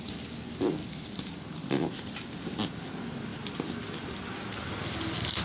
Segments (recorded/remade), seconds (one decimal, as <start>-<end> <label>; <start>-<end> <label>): 0.0-5.4 recorded

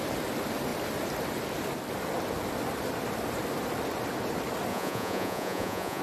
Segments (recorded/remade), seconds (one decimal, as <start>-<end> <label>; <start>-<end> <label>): 0.0-4.7 recorded; 4.7-6.0 remade

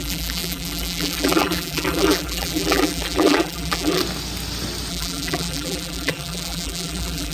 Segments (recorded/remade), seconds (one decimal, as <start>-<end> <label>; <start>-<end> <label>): 0.0-4.0 remade; 4.0-4.9 recorded; 4.9-7.3 remade

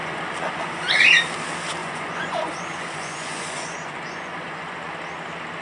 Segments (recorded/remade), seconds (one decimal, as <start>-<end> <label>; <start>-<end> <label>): 0.0-1.0 remade; 1.0-1.8 recorded; 1.8-4.9 remade; 4.9-5.6 recorded

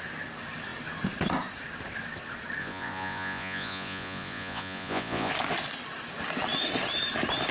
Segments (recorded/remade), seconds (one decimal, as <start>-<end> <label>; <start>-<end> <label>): 0.0-2.6 recorded; 2.6-5.3 remade; 5.3-7.5 recorded

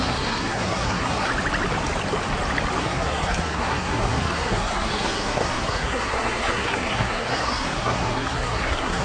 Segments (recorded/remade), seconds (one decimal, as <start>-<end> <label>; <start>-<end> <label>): 0.0-1.3 remade; 1.3-2.8 recorded; 2.8-9.0 remade